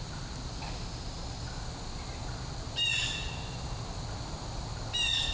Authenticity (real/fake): real